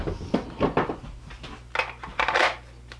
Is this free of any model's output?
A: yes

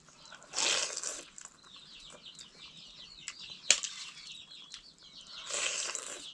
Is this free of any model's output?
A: yes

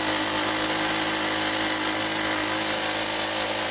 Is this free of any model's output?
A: yes